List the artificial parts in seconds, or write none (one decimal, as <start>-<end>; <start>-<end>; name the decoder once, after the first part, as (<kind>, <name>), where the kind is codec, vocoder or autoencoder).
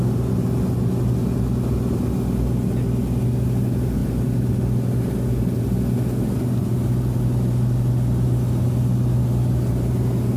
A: none